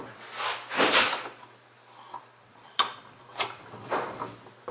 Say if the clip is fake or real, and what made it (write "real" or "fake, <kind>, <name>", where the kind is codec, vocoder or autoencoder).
real